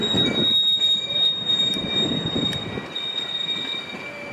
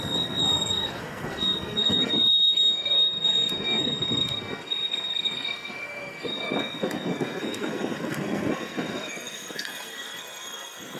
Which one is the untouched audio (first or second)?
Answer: first